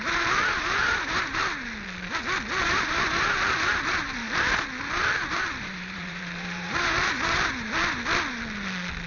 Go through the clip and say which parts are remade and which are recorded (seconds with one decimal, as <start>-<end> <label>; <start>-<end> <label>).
0.0-1.4 remade; 1.4-2.6 recorded; 2.6-4.5 remade; 4.5-5.2 recorded; 5.2-7.5 remade; 7.5-9.1 recorded